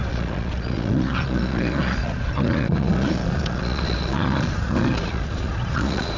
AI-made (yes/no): yes